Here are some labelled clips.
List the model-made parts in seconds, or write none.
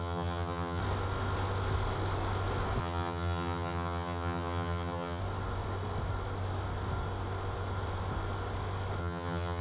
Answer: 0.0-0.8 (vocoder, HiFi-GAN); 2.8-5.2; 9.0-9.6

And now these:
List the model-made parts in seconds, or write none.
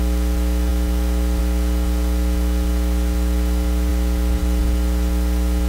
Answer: none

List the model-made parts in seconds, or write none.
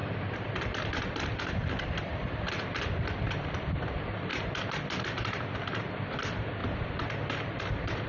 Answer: 2.5-6.6 (vocoder, BigVGAN v2); 7.6-8.1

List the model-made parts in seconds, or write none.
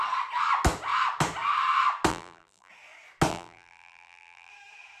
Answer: 2.1-2.7 (vocoder, BigVGAN v2); 3.3-4.5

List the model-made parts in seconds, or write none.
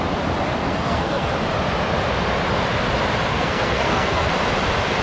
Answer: 0.6-1.3 (codec, SNAC); 3.3-4.3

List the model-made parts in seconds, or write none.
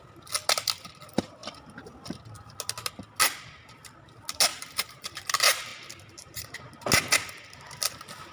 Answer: 4.5-5.2 (vocoder, BigVGAN v2); 5.7-6.6